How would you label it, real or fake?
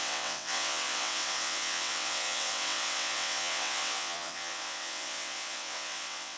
fake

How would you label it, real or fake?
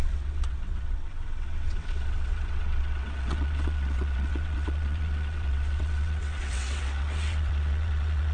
fake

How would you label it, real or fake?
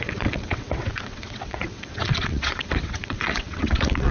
fake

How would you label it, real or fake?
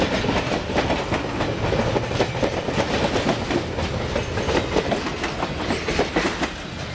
real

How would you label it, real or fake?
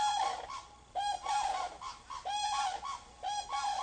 real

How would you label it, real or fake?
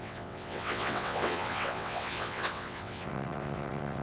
fake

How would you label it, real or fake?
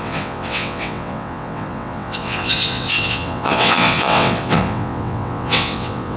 fake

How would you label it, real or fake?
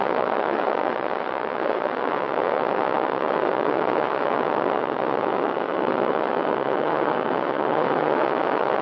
fake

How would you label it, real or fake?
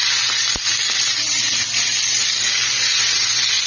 real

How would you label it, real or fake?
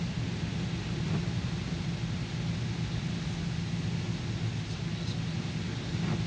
real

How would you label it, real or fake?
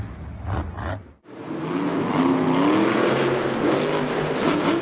real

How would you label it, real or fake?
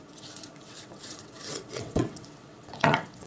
fake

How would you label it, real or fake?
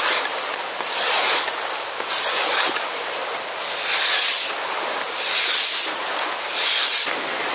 real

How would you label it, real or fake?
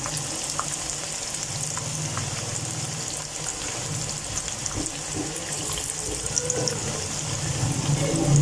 real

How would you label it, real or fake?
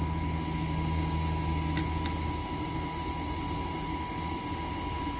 real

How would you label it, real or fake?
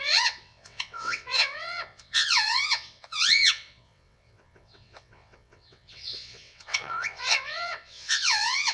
fake